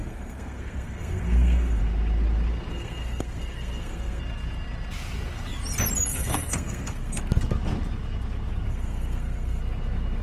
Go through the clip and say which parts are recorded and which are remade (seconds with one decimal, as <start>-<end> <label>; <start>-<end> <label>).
0.0-1.8 remade; 1.8-2.7 recorded; 2.7-4.2 remade; 4.2-6.1 recorded; 6.1-7.2 remade; 7.2-8.7 recorded; 8.7-9.6 remade; 9.6-10.2 recorded